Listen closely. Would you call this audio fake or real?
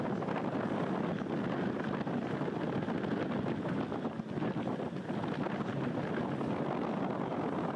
real